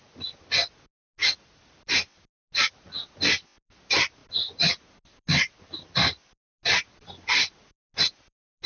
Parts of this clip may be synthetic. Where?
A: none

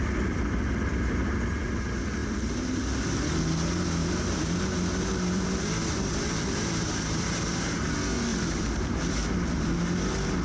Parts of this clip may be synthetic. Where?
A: 2.2-3.0 (vocoder, BigVGAN v2); 4.0-7.9; 8.3-9.0

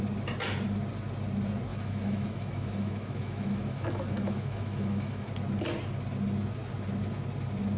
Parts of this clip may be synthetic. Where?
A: 1.7-5.3 (autoencoder, DAC-VAE)